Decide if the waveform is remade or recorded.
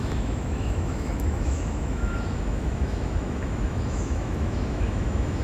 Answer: remade